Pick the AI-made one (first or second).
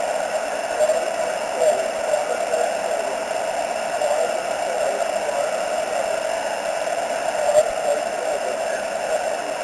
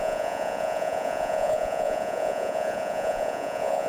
second